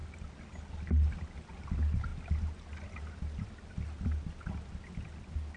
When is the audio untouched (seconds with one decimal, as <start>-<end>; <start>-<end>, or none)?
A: 0.0-5.6